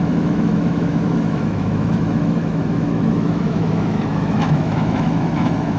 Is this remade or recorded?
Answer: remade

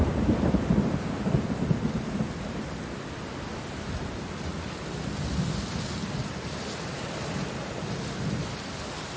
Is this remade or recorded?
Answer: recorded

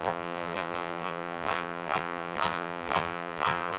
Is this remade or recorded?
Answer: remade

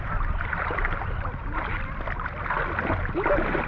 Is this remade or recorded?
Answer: recorded